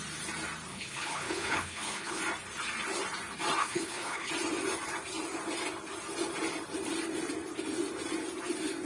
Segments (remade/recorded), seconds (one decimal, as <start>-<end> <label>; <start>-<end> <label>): 0.0-0.7 recorded; 0.7-2.2 remade; 2.2-3.6 recorded; 3.6-4.3 remade; 4.3-8.9 recorded